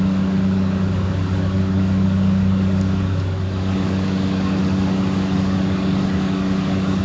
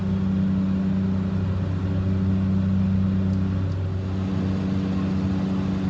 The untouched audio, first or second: second